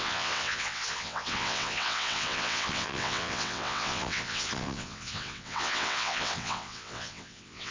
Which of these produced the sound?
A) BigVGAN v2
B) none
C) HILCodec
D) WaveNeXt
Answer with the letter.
D